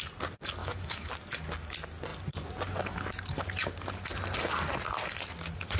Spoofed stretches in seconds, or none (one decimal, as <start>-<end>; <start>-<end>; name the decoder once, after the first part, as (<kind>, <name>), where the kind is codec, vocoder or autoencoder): 0.6-1.1 (autoencoder, DAC-VAE)